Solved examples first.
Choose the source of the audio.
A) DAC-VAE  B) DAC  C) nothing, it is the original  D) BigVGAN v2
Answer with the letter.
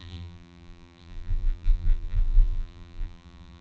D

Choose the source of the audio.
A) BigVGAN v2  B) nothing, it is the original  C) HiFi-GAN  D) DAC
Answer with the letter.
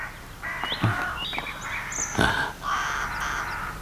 B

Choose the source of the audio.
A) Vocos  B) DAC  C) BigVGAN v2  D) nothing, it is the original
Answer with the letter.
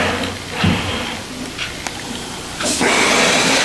C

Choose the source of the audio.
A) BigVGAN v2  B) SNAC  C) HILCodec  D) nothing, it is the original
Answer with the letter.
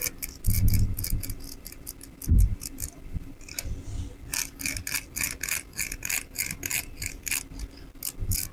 D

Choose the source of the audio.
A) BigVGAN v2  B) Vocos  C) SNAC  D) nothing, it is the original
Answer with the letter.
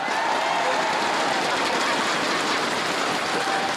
D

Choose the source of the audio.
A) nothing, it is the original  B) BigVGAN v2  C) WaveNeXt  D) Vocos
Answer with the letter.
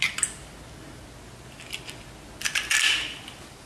A